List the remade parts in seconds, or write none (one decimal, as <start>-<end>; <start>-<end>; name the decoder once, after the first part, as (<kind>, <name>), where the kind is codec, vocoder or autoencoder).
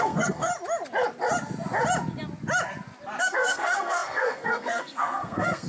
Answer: 0.0-0.5 (codec, SNAC); 3.2-5.7